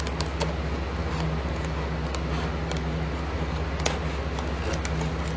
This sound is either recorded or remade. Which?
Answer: recorded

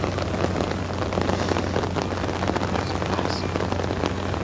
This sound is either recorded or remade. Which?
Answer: recorded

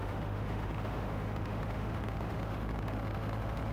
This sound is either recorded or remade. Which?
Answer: remade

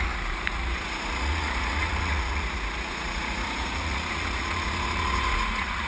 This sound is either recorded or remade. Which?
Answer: remade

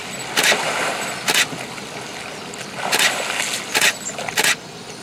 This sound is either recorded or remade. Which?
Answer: recorded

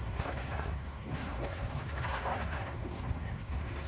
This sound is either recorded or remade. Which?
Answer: remade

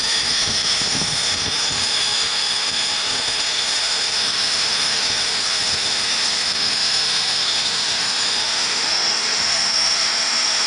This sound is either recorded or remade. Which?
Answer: remade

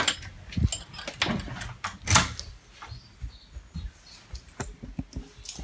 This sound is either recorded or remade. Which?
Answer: recorded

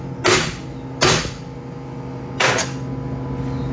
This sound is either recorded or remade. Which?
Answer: recorded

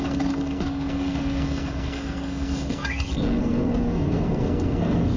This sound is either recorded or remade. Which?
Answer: remade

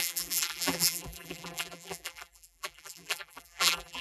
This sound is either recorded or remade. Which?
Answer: remade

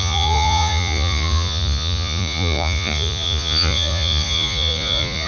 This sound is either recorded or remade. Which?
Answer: remade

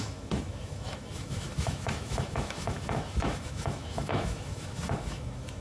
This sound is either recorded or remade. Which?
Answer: remade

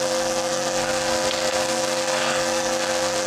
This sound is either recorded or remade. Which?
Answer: remade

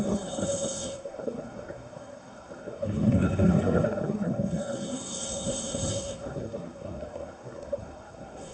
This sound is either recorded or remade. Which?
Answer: remade